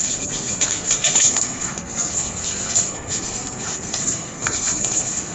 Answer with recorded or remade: remade